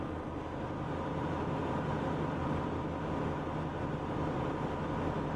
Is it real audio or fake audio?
real